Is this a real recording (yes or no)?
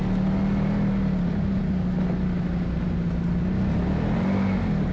yes